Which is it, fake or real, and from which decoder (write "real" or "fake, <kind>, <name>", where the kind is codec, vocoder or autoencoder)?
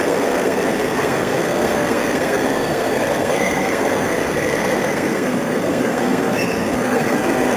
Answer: fake, codec, SNAC